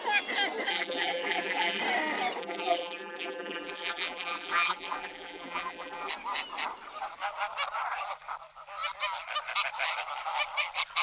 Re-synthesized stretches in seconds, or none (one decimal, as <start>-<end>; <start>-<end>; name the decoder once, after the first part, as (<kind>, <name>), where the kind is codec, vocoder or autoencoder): 0.7-1.8 (vocoder, BigVGAN v2); 2.4-6.1